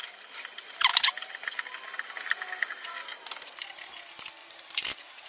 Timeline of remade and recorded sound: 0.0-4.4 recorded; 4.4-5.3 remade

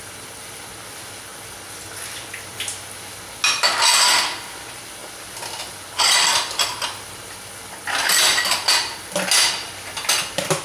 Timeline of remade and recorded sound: 0.0-10.6 recorded